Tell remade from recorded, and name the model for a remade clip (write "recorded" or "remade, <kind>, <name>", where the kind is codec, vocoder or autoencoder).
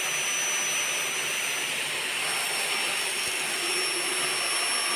recorded